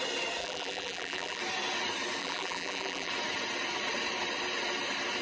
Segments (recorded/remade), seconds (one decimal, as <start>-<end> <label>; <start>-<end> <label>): 0.0-0.4 recorded; 0.4-1.4 remade; 1.4-2.2 recorded; 2.2-3.1 remade; 3.1-5.2 recorded